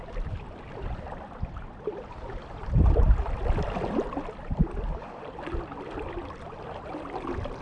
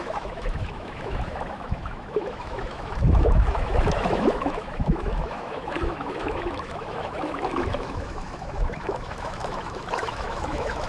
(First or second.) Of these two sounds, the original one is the first